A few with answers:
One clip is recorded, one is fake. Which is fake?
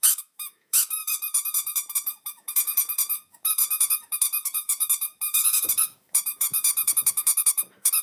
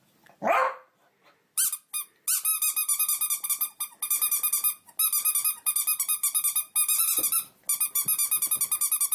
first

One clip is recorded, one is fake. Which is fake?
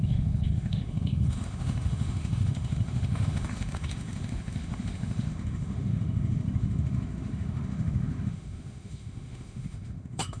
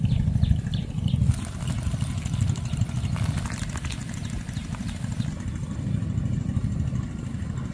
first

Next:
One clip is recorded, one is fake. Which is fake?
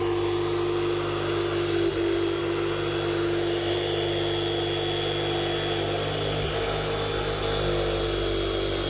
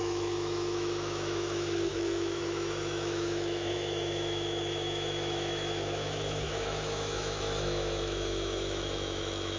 second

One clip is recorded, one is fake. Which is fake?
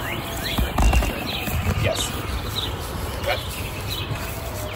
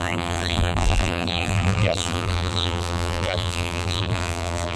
second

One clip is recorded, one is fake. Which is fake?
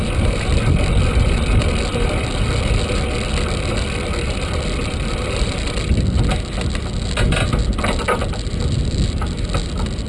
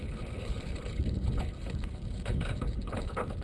second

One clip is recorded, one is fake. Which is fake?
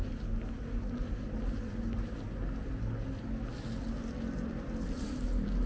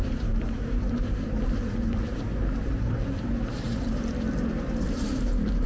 second